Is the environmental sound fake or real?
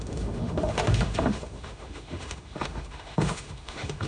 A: fake